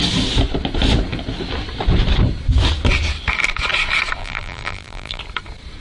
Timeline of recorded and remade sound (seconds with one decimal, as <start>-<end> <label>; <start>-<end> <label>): 0.0-4.2 recorded; 4.2-5.2 remade; 5.2-5.8 recorded